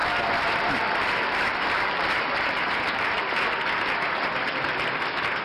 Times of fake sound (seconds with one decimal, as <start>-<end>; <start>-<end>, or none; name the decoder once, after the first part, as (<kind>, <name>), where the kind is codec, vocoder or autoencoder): 0.0-3.2 (vocoder, BigVGAN v2)